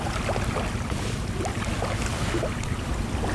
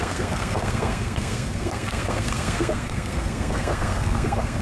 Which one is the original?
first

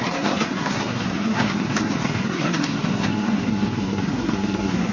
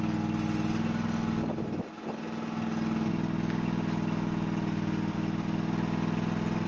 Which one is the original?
second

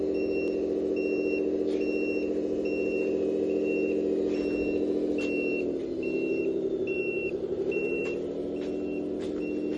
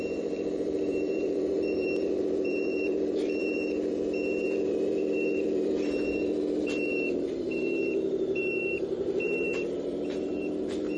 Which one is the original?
first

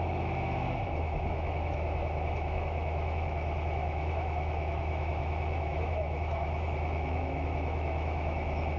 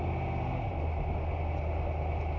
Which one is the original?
second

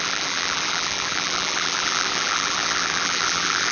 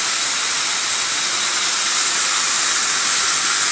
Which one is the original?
second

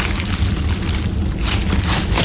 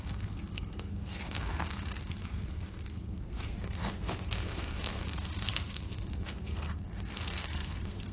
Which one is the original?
first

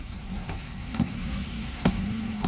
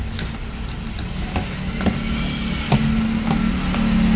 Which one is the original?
second